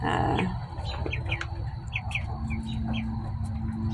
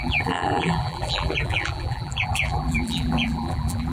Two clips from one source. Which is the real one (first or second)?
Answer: first